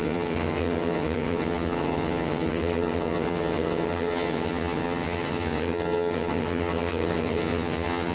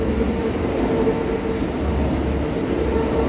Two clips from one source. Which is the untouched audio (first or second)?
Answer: second